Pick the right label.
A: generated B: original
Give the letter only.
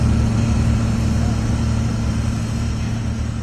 B